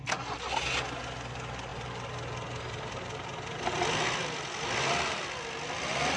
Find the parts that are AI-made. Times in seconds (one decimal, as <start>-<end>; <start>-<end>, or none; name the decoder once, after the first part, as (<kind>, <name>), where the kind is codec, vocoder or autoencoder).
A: none